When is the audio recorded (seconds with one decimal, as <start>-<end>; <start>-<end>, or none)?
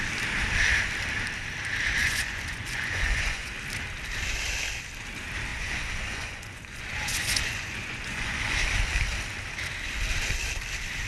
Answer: 0.0-2.0; 3.5-5.5; 8.6-11.1